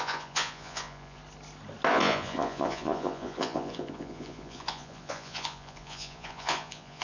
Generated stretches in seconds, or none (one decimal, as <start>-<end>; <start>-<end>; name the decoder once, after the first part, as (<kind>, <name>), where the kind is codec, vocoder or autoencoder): 0.0-1.2 (vocoder, Vocos); 1.9-7.0